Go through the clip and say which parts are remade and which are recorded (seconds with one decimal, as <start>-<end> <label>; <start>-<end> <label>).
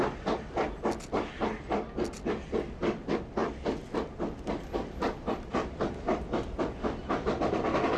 0.0-8.0 recorded